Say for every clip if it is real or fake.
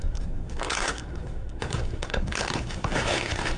fake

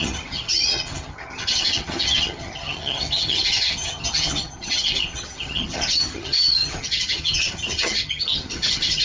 fake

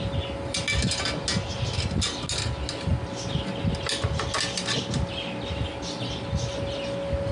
real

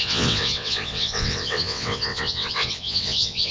fake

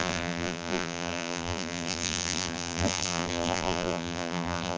fake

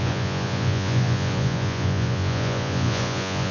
fake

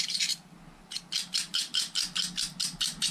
real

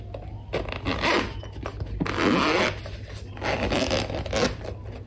real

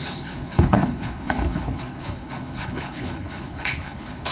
fake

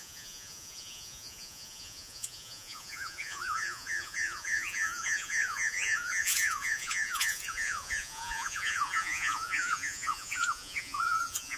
fake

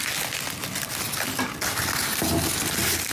real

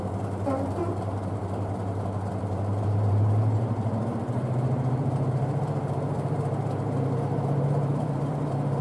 fake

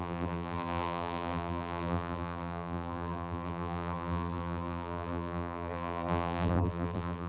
fake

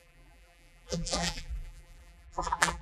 fake